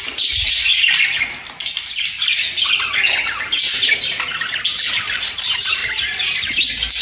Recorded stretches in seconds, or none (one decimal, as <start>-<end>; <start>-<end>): 0.7-4.9; 5.8-6.4